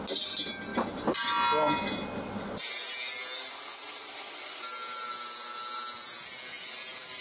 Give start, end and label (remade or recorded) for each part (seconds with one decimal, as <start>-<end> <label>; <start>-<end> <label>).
0.0-7.2 recorded